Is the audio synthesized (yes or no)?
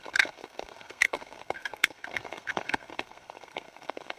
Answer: yes